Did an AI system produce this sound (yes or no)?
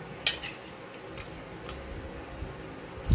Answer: no